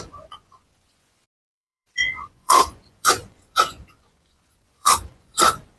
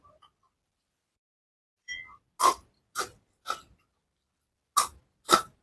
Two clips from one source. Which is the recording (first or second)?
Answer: second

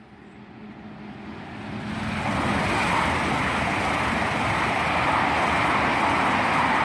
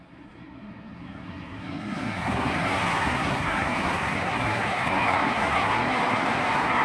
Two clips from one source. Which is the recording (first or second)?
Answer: first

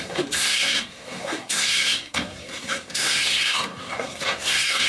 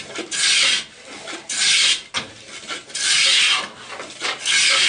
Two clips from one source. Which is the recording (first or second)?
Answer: second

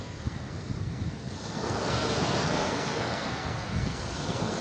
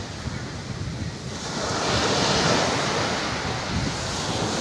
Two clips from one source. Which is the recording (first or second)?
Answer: second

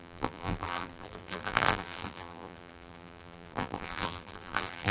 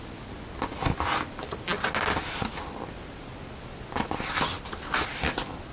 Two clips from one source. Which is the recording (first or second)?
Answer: second